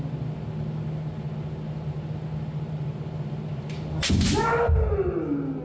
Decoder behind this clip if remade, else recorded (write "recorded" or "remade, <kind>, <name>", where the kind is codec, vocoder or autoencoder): recorded